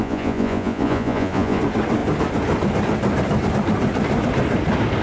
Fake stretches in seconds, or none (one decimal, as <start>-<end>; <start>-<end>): 0.0-1.6